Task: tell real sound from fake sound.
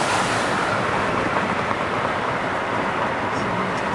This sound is real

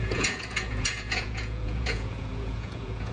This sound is fake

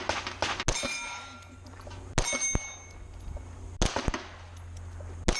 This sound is real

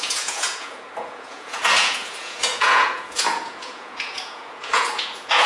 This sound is fake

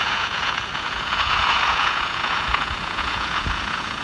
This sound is fake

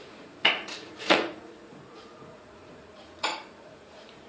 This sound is fake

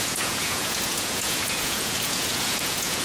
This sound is fake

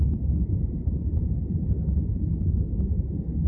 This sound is real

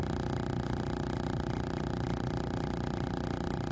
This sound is real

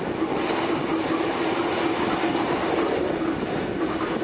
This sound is real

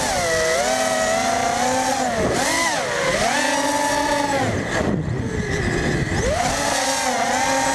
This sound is real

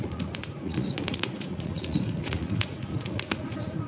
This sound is fake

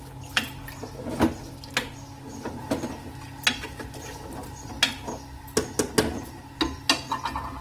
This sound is real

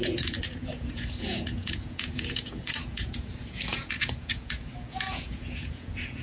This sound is fake